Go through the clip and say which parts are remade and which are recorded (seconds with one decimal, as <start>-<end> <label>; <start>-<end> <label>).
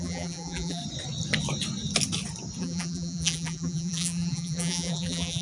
0.0-0.8 remade; 0.8-2.6 recorded; 2.6-5.4 remade